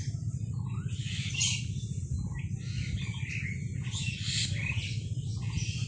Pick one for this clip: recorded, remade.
recorded